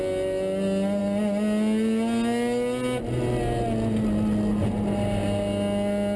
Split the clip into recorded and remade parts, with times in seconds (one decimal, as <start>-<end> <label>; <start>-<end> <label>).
0.0-6.2 recorded